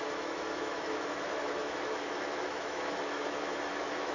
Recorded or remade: remade